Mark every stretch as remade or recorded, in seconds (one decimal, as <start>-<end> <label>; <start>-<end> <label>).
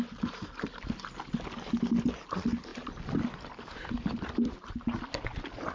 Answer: 0.0-5.7 recorded